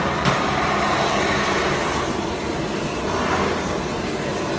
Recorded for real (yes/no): yes